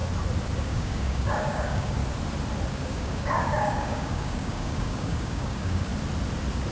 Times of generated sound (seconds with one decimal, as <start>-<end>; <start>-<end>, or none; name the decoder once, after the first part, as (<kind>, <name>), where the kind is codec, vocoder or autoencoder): 0.6-2.0 (codec, DAC); 2.7-5.9